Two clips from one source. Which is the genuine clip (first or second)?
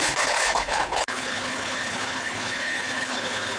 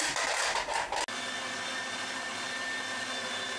second